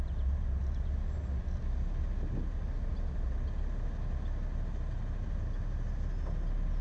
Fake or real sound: real